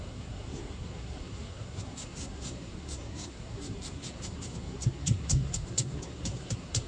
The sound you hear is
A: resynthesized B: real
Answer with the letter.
A